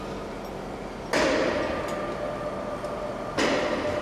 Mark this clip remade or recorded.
recorded